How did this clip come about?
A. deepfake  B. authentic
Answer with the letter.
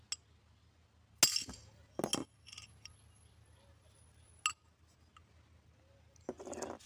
B